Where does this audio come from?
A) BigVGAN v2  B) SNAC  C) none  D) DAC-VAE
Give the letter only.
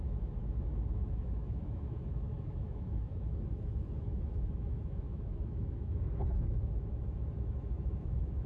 D